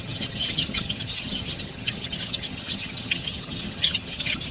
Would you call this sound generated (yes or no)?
yes